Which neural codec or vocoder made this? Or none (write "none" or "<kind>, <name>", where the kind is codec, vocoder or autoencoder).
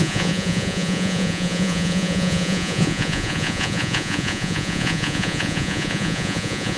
vocoder, Vocos